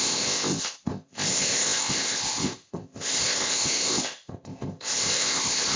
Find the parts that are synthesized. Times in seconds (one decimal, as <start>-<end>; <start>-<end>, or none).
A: 0.0-5.8